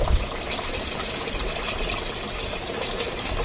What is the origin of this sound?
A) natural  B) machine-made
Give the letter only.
A